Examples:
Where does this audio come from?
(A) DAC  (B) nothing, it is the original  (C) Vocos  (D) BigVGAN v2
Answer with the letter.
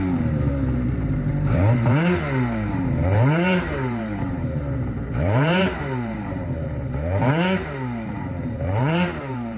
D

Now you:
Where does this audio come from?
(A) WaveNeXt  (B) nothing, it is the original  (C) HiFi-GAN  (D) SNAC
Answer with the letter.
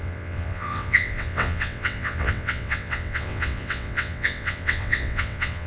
A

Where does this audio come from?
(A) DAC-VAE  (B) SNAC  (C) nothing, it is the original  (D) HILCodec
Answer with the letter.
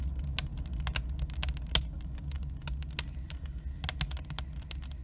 C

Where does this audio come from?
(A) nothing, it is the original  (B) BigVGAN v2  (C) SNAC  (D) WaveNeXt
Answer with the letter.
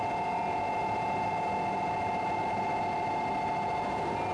A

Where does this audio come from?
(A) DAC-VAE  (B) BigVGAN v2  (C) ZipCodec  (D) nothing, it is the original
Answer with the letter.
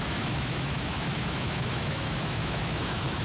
A